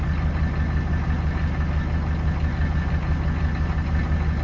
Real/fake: real